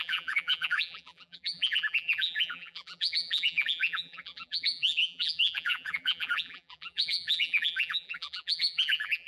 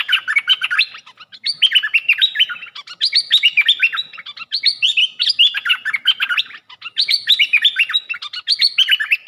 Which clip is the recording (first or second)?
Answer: second